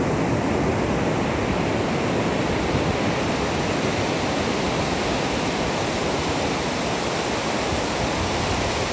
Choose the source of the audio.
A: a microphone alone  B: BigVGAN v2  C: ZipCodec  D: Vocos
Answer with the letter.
A